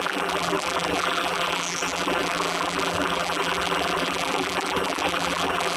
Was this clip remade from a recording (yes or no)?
yes